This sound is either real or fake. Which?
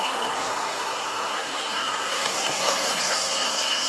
fake